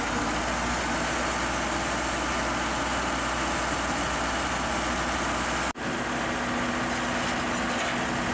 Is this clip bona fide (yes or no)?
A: yes